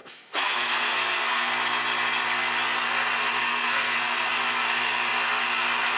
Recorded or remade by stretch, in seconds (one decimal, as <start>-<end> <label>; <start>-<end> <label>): 0.0-1.5 remade; 1.5-3.4 recorded; 3.4-4.3 remade; 4.3-6.0 recorded